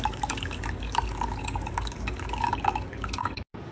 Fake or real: fake